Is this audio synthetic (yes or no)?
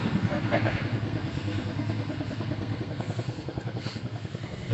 yes